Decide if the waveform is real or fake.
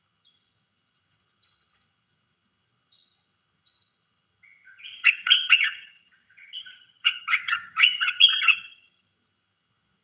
fake